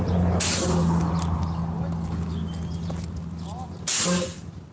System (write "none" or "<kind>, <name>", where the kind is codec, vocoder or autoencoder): none